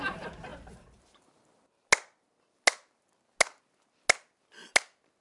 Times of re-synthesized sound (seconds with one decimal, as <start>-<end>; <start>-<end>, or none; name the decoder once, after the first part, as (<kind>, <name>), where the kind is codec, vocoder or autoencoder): none